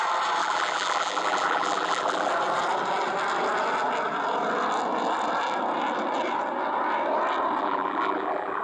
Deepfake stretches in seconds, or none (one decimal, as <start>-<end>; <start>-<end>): 0.4-2.3; 7.6-8.6